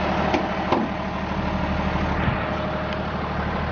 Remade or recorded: recorded